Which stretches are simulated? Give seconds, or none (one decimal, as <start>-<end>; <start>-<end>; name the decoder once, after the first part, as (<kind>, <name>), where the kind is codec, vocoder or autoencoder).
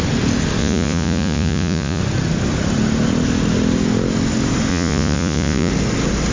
0.6-2.0 (vocoder, Vocos); 4.7-5.7